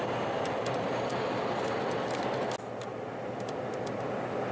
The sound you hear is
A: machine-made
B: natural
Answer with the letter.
B